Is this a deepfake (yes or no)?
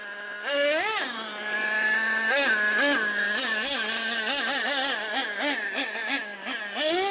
no